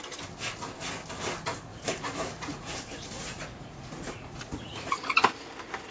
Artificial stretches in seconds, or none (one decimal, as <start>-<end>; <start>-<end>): 1.7-5.2